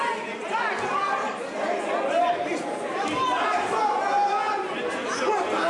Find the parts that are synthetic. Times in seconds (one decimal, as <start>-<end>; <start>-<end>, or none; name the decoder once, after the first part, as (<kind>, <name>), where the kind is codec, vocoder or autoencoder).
none